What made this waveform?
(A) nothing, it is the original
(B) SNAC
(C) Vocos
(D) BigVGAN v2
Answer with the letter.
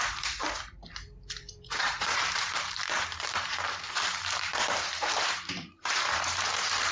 D